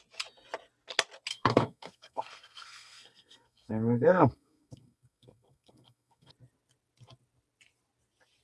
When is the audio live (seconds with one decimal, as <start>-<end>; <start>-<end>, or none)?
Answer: 0.0-1.3; 6.3-8.4